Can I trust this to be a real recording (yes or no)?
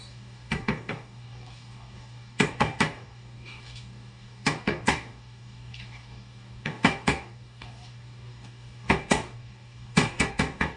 no